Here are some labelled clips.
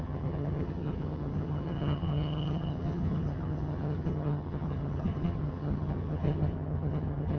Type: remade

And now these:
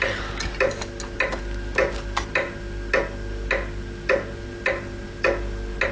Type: recorded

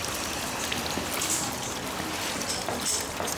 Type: recorded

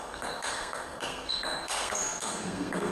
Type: remade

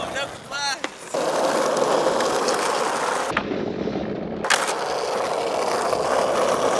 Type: recorded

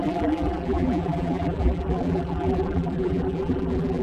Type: remade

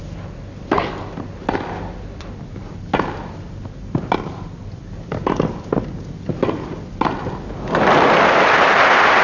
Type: recorded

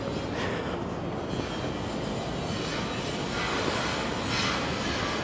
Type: recorded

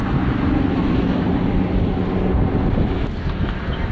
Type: recorded